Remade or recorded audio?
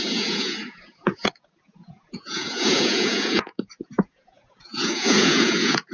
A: remade